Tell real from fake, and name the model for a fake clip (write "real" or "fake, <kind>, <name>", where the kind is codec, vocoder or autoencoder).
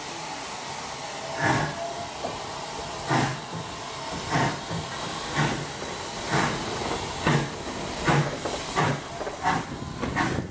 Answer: real